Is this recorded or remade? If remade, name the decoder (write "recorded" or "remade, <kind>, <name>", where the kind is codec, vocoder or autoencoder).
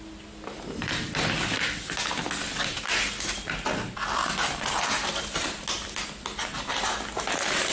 recorded